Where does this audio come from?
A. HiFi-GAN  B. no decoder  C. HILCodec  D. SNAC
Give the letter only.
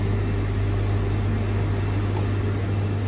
B